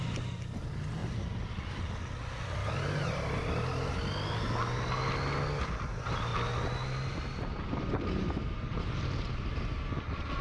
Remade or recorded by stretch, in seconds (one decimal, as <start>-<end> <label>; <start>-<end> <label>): 0.0-10.4 recorded